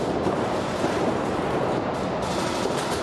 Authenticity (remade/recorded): recorded